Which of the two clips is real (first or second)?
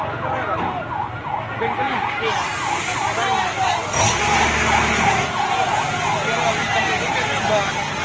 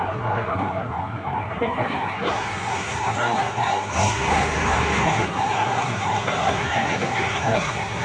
first